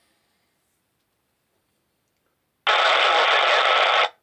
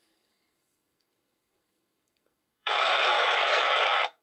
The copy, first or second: second